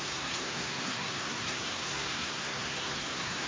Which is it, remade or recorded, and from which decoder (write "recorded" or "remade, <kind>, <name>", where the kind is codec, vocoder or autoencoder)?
remade, codec, SNAC